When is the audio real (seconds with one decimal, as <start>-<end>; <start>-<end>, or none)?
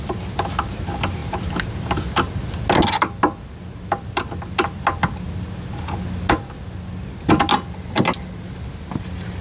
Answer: 0.0-9.4